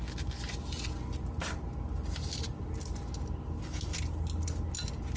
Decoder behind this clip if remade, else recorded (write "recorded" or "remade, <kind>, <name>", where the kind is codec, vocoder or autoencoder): recorded